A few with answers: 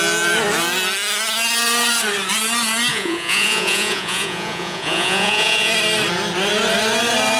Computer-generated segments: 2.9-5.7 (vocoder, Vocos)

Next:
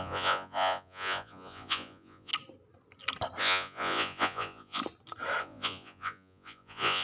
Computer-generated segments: 0.0-2.3 (vocoder, Vocos); 3.4-4.8; 5.4-7.0

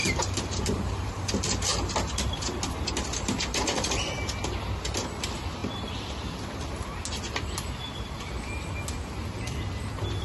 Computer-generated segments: 0.0-1.1 (vocoder, BigVGAN v2)

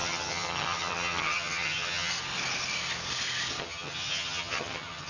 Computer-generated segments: 0.0-2.1 (vocoder, HiFi-GAN); 3.6-5.1